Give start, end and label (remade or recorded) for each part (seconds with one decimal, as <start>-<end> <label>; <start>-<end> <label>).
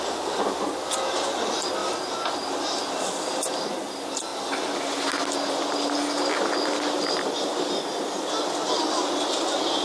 0.0-9.8 recorded